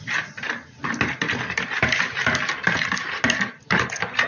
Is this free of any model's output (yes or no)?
yes